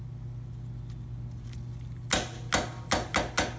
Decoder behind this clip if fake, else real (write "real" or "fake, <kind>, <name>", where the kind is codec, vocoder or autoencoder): real